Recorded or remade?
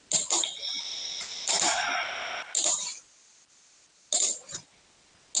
recorded